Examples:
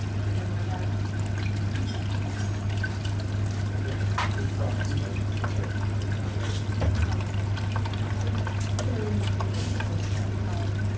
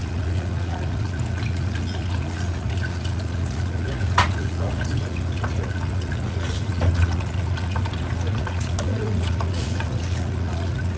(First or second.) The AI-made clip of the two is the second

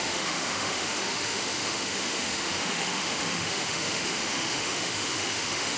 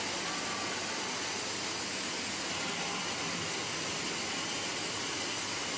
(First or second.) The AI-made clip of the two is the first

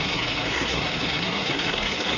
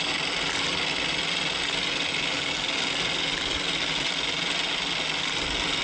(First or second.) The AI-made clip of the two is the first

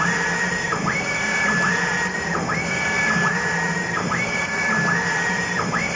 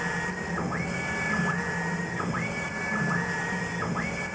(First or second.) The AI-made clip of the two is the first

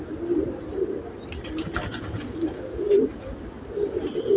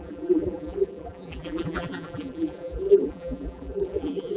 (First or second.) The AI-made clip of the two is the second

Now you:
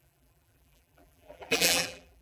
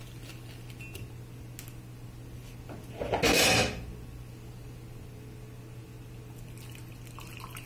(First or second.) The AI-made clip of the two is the first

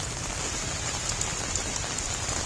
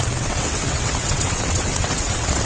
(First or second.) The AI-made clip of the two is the second